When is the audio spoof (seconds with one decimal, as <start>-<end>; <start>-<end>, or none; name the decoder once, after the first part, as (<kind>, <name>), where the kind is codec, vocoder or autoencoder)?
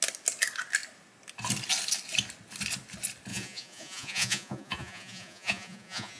3.3-6.2 (vocoder, Vocos)